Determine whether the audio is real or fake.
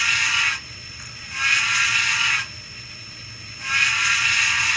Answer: real